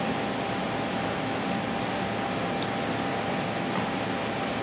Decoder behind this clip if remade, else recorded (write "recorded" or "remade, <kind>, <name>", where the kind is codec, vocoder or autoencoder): recorded